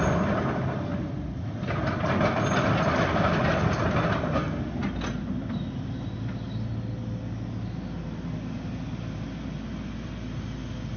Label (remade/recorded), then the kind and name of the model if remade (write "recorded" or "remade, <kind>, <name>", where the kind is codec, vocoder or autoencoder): recorded